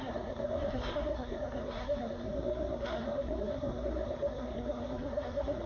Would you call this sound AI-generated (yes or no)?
yes